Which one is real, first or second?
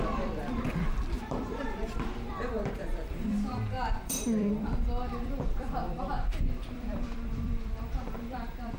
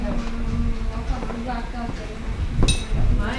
second